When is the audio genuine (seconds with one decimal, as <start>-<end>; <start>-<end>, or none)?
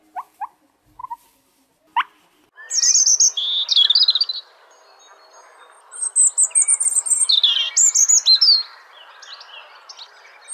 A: 0.0-10.5